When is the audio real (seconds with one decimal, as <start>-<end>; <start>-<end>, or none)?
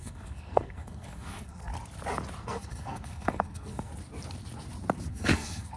1.7-2.4; 3.9-5.1